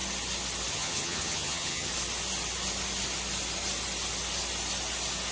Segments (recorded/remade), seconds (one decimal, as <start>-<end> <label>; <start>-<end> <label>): 0.0-0.7 recorded; 0.7-1.9 remade; 1.9-5.3 recorded

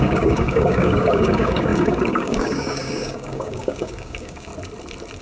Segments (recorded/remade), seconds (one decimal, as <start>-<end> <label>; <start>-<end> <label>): 0.0-4.5 remade; 4.5-5.2 recorded